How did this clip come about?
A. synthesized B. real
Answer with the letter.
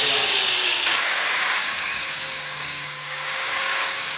A